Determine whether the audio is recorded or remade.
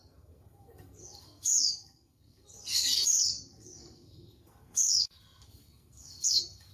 remade